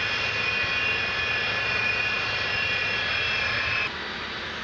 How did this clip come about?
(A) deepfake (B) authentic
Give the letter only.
B